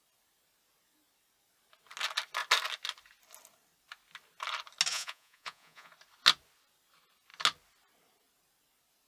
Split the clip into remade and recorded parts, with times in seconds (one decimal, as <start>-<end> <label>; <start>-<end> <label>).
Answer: 0.0-4.9 recorded; 4.9-5.9 remade; 5.9-9.1 recorded